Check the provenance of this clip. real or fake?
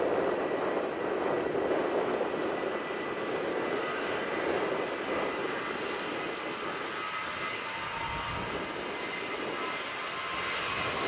real